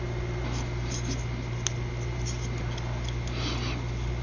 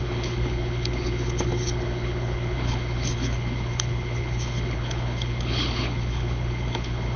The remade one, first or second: second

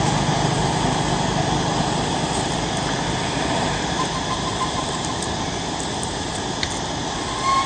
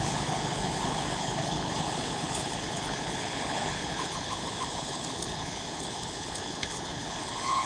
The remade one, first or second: second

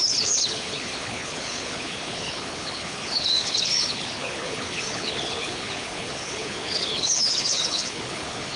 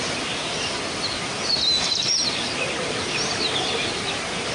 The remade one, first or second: first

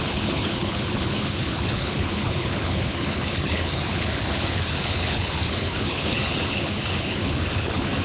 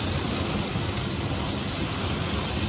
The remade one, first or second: first